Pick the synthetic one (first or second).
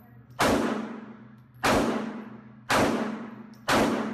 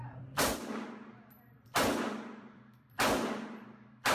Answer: second